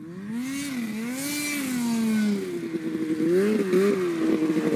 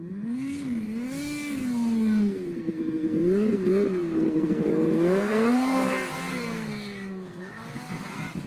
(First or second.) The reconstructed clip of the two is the second